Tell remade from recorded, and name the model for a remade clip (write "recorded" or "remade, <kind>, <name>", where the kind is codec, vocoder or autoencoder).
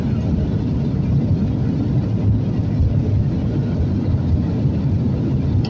recorded